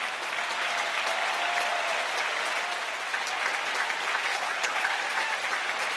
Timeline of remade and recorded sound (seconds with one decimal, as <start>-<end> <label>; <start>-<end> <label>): 0.0-4.3 recorded; 4.3-5.0 remade; 5.0-6.0 recorded